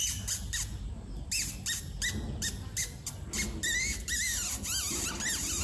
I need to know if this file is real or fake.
real